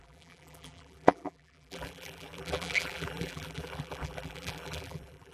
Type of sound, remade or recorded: remade